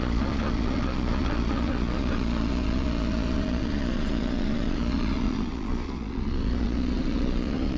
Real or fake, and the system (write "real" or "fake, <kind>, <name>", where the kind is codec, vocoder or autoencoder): fake, vocoder, Vocos